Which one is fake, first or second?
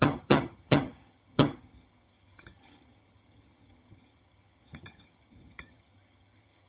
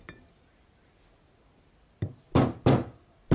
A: first